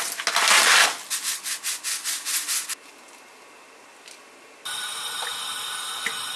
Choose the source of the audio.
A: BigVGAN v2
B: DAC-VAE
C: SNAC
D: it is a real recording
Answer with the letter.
D